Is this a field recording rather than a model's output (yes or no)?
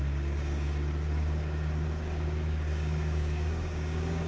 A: no